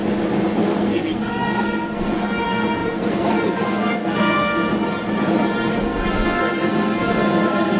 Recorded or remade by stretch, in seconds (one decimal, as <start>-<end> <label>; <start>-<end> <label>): 0.0-0.6 recorded; 0.6-4.7 remade; 4.7-5.7 recorded; 5.7-7.8 remade